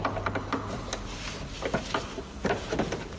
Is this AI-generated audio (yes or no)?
no